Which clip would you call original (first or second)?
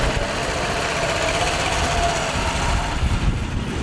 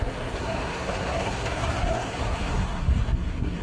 first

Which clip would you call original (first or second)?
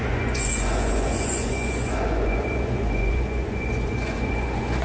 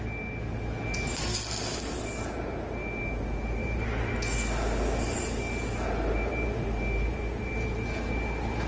second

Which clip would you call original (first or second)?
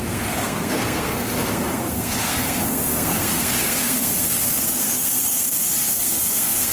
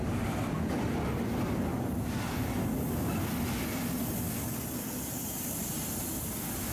second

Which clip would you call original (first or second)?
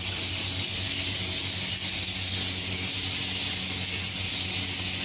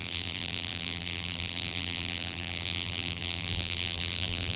first